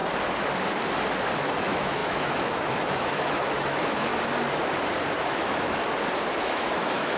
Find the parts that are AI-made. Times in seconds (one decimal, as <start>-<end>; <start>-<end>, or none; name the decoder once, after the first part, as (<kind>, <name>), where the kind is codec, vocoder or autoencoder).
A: 1.6-4.1 (autoencoder, DAC-VAE); 5.3-5.8; 6.3-7.2

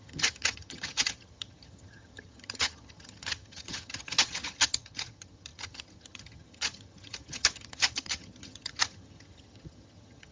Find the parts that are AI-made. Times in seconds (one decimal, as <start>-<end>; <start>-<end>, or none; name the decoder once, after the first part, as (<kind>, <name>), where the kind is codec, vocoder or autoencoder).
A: 0.0-10.3 (vocoder, HiFi-GAN)

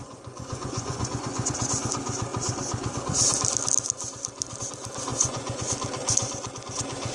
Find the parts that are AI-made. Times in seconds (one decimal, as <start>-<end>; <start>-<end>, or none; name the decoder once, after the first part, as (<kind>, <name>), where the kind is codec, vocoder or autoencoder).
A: 0.0-1.5 (vocoder, Vocos); 5.1-5.7

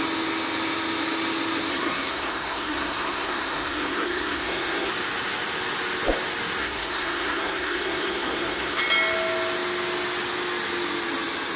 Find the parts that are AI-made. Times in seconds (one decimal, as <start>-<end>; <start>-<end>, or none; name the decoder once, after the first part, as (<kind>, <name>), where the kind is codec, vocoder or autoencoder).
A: 1.7-4.9 (codec, SNAC); 6.6-8.8

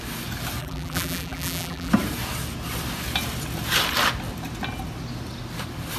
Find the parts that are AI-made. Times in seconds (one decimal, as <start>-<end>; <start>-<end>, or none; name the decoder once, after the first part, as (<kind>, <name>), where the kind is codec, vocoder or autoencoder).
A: 0.6-1.9 (vocoder, BigVGAN v2)

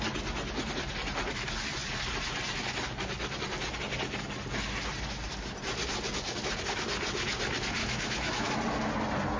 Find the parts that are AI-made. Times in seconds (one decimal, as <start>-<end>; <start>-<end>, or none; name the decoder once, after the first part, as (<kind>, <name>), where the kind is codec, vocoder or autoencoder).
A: 7.8-8.5 (autoencoder, DAC-VAE)